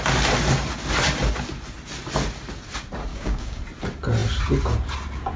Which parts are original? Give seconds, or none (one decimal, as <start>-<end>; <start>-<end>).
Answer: 0.0-3.1; 3.6-5.4

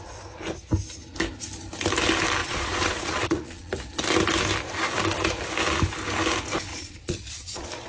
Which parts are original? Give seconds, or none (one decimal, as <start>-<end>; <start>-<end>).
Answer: 0.0-2.4; 3.7-6.7

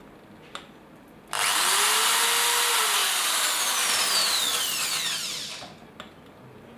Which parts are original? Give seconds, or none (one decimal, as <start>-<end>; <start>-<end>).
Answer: 0.0-6.8

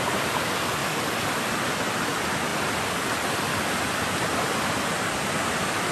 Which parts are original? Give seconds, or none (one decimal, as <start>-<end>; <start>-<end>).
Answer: 0.0-0.8; 2.1-5.9